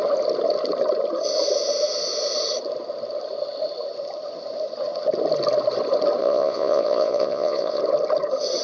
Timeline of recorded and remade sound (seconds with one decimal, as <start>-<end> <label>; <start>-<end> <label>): 0.0-6.2 recorded; 6.2-7.8 remade; 7.8-8.6 recorded